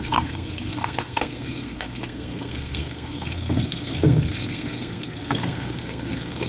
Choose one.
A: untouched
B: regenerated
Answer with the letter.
B